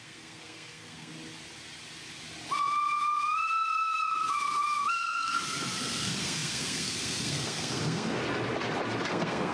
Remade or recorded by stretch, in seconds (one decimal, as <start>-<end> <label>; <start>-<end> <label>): 0.0-1.1 remade; 1.1-4.9 recorded; 4.9-8.2 remade; 8.2-9.1 recorded; 9.1-9.5 remade